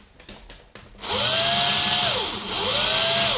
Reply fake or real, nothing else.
real